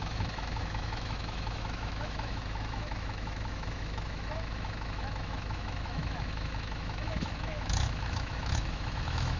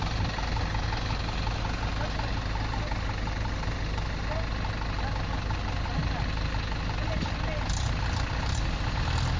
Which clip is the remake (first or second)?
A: first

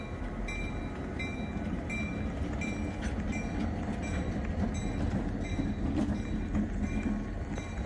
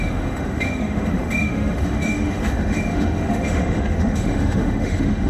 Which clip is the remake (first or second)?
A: second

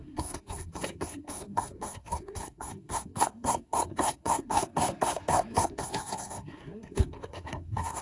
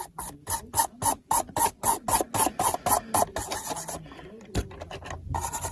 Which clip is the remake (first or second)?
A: first